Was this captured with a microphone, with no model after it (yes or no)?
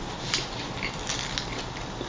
yes